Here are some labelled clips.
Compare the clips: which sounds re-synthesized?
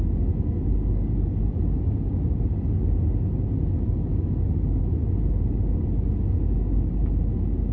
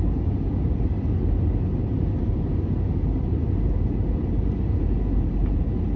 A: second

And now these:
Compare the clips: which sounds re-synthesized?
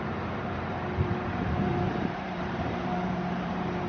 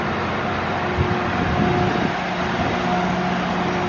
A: first